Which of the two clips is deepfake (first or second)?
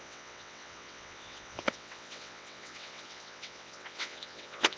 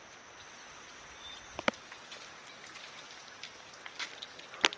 first